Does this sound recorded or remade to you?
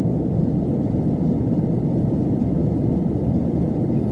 remade